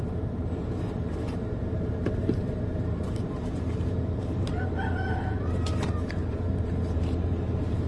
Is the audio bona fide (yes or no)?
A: no